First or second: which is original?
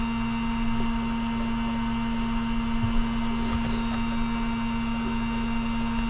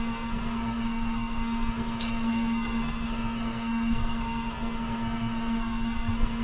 first